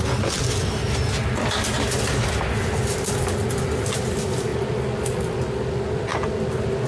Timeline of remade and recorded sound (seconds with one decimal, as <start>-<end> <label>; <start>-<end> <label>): 0.0-6.9 recorded